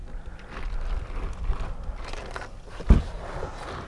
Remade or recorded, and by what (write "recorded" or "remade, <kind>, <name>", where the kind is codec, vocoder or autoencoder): recorded